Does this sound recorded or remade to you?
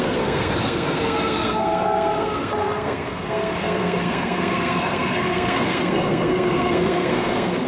remade